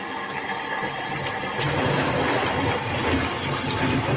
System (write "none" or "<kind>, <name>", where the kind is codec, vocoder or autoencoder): none